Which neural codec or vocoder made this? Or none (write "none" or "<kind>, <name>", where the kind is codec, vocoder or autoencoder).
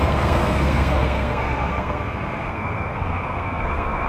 codec, SNAC